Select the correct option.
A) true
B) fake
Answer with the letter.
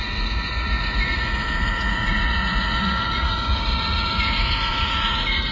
B